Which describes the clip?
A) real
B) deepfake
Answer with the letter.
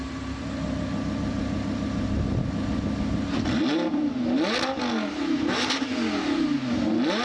A